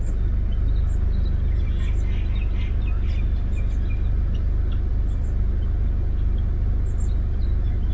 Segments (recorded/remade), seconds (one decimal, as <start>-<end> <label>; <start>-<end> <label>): 0.0-7.9 recorded